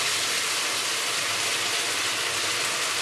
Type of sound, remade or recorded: recorded